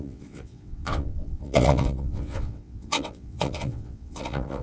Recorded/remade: remade